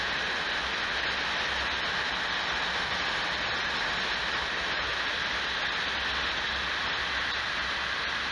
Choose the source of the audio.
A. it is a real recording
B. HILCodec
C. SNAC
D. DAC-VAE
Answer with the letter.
A